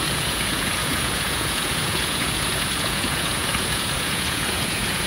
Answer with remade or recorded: remade